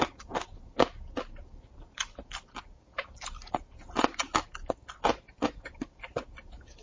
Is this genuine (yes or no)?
yes